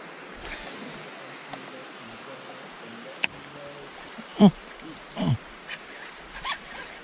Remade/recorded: recorded